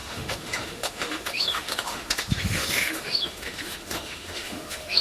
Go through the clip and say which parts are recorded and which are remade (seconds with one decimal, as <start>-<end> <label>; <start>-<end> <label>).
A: 0.0-5.0 remade